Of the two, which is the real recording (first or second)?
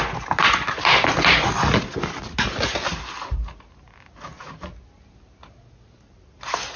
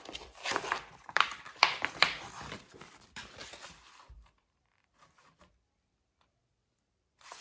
first